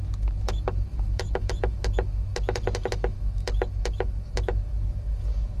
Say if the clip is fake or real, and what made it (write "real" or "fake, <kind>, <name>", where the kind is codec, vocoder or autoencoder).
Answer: fake, autoencoder, DAC-VAE